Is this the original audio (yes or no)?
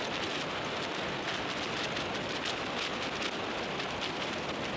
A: yes